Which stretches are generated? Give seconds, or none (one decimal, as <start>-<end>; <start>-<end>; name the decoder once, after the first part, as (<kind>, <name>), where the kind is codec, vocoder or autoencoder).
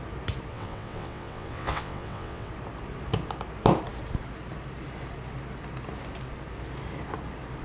0.5-2.5 (vocoder, WaveNeXt)